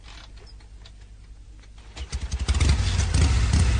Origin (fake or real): real